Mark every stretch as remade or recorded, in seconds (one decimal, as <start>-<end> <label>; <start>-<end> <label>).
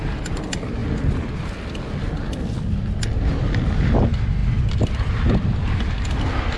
0.0-6.6 recorded